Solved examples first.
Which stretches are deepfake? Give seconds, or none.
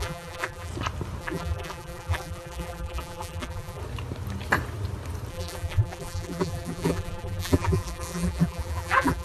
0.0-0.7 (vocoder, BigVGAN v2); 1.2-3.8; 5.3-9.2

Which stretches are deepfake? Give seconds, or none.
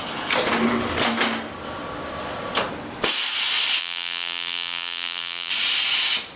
3.8-5.5 (vocoder, BigVGAN v2)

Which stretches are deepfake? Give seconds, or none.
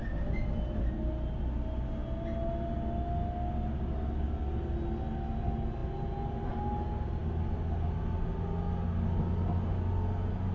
none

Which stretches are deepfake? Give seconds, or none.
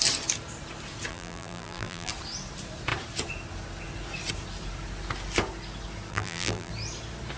1.1-2.1 (vocoder, BigVGAN v2); 6.1-6.7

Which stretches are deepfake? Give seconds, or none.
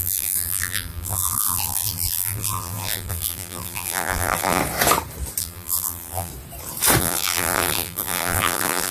0.0-4.6 (vocoder, BigVGAN v2); 5.4-6.3; 7.0-8.9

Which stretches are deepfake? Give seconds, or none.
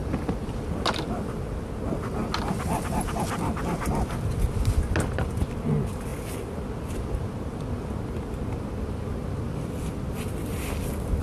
0.0-0.7 (vocoder, BigVGAN v2)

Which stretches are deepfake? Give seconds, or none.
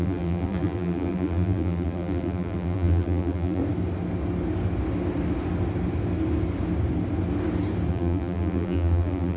0.0-3.6 (vocoder, BigVGAN v2); 7.9-9.4